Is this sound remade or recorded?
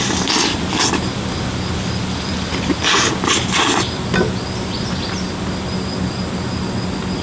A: recorded